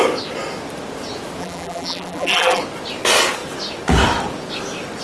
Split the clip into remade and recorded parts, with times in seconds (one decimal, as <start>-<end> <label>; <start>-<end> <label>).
0.0-1.4 recorded; 1.4-2.6 remade; 2.6-5.0 recorded